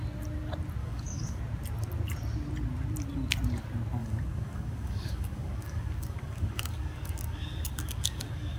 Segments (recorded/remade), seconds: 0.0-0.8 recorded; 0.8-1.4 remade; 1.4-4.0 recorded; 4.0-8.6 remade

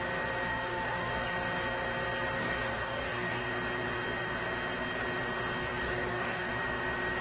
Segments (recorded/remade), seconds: 0.0-0.5 recorded; 0.5-1.1 remade; 1.1-2.4 recorded; 2.4-3.4 remade; 3.4-5.7 recorded; 5.7-6.5 remade; 6.5-7.2 recorded

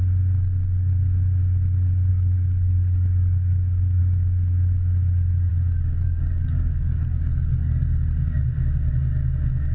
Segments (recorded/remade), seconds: 0.0-2.1 recorded; 2.1-4.0 remade; 4.0-5.5 recorded; 5.5-7.8 remade; 7.8-9.7 recorded

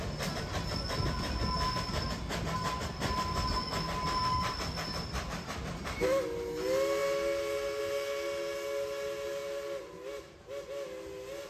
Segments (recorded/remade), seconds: 0.0-11.5 recorded

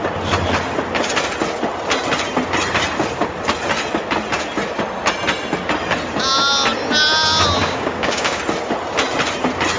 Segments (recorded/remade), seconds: 0.0-7.6 recorded; 7.6-8.4 remade; 8.4-9.8 recorded

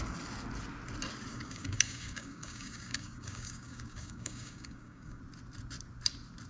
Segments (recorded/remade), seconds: 0.0-1.3 recorded; 1.3-5.2 remade; 5.2-6.5 recorded

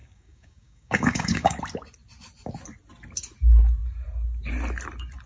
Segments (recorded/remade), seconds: 0.0-1.6 remade; 1.6-5.3 recorded

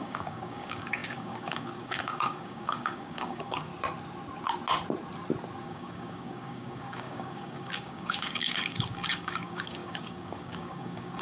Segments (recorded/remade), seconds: 0.0-3.7 remade; 3.7-5.6 recorded; 5.6-11.2 remade